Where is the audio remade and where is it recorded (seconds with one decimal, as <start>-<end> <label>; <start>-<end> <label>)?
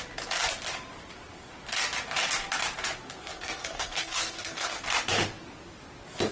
0.0-3.2 recorded; 3.2-4.8 remade; 4.8-6.3 recorded